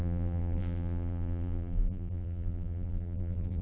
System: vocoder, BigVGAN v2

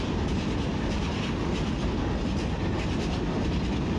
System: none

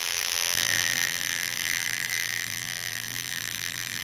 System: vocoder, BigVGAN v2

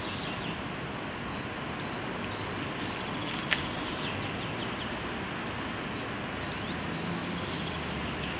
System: none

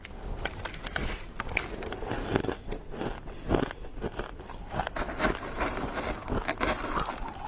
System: none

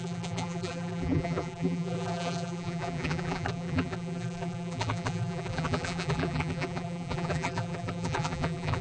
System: vocoder, BigVGAN v2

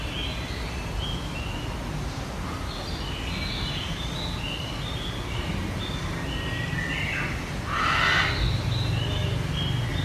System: none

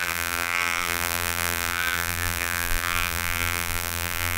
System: vocoder, BigVGAN v2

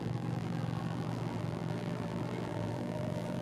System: vocoder, BigVGAN v2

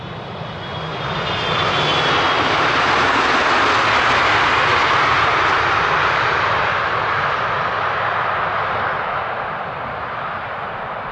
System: none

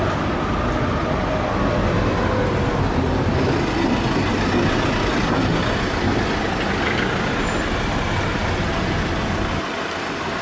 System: none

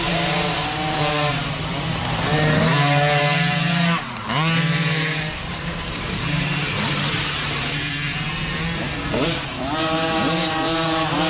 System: vocoder, BigVGAN v2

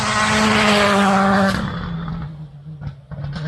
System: none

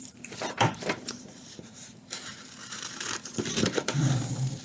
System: vocoder, BigVGAN v2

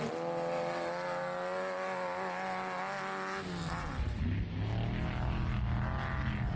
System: none